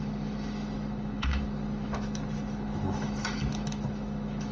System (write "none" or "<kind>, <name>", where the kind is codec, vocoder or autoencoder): autoencoder, DAC-VAE